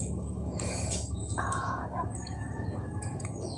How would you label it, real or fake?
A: fake